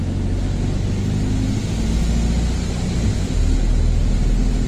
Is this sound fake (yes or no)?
no